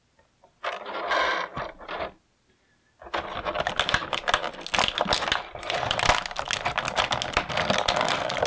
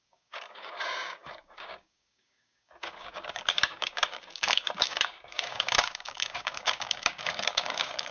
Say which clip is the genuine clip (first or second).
first